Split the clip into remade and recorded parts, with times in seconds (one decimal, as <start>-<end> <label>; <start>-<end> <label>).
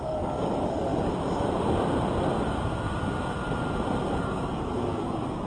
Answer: 0.0-0.9 remade; 0.9-4.2 recorded; 4.2-5.5 remade